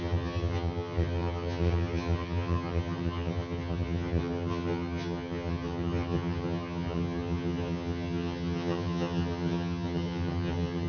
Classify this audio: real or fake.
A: fake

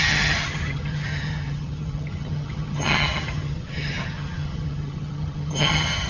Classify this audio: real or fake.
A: fake